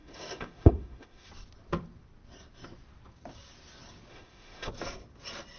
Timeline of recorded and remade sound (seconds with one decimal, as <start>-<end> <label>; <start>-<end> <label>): 0.0-1.3 remade; 1.3-4.1 recorded; 4.1-4.7 remade; 4.7-5.6 recorded